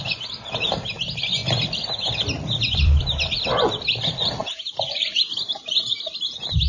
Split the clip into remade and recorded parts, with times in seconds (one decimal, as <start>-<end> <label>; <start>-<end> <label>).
0.0-1.4 remade; 1.4-2.4 recorded; 2.4-6.7 remade